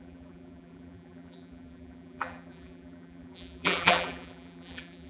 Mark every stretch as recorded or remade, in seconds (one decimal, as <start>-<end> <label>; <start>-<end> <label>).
0.0-5.1 remade